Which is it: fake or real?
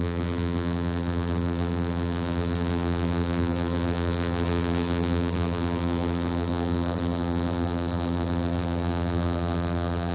fake